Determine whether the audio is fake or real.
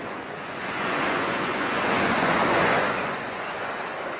fake